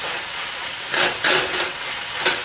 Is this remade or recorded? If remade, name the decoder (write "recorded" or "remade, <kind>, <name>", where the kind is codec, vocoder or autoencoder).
remade, vocoder, WaveNeXt